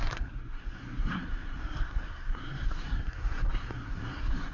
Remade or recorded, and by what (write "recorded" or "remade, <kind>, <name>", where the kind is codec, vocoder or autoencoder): remade, codec, SNAC